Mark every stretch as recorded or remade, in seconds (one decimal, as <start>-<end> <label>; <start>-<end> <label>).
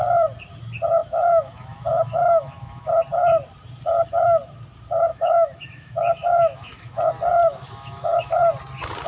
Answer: 0.0-1.0 recorded; 1.0-2.9 remade; 2.9-5.1 recorded; 5.1-7.0 remade; 7.0-7.4 recorded; 7.4-8.4 remade; 8.4-9.1 recorded